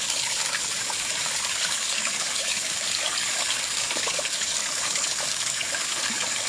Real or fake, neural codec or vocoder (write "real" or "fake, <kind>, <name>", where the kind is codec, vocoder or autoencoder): fake, codec, DAC